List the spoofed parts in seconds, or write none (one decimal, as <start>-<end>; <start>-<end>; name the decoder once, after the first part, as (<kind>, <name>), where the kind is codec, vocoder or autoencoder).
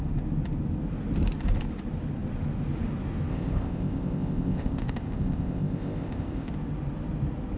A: 3.3-6.5 (codec, ZipCodec)